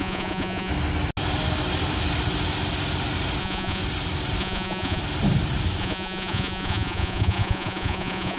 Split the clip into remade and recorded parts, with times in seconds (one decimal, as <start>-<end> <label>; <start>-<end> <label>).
0.0-0.7 remade; 0.7-3.4 recorded; 3.4-3.8 remade; 3.8-4.4 recorded; 4.4-5.0 remade; 5.0-5.8 recorded; 5.8-8.4 remade